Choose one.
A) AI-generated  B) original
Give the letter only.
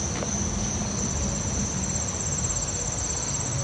B